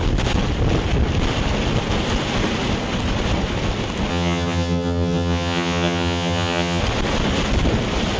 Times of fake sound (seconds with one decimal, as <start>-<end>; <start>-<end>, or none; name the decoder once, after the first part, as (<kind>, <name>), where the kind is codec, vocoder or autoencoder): 4.1-6.8 (vocoder, HiFi-GAN)